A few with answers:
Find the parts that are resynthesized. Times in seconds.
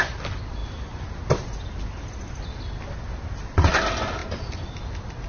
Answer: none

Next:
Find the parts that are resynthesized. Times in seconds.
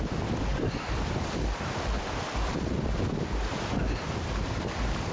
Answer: 0.5-3.1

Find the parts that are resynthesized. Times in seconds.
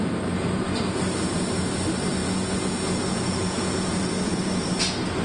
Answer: 2.2-4.6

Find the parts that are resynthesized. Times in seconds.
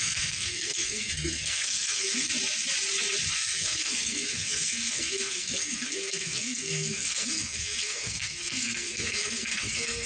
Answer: 0.0-2.3; 3.3-10.1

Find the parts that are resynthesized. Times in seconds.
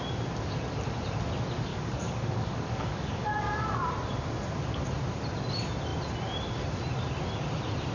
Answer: 1.7-3.4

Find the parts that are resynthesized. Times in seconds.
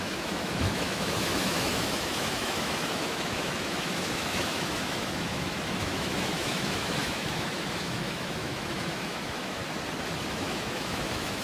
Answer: 0.0-9.6; 10.3-11.4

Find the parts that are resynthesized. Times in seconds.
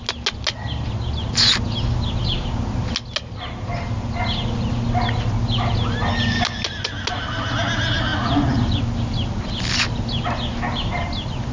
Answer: none